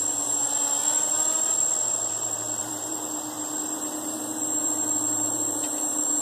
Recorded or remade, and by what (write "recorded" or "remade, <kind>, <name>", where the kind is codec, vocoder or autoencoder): remade, vocoder, BigVGAN v2